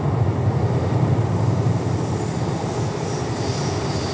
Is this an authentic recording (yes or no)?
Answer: yes